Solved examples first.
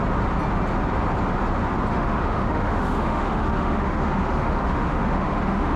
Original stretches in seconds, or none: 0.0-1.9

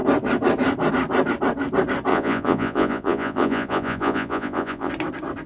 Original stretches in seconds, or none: 0.0-2.1; 4.9-5.5